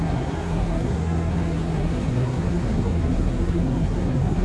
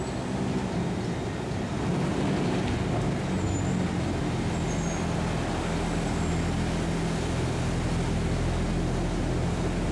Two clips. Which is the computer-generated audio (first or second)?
first